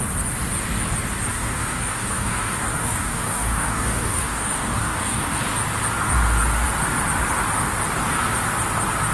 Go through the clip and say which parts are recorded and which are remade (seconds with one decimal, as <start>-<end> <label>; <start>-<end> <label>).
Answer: 0.0-1.3 recorded; 1.3-5.4 remade; 5.4-9.1 recorded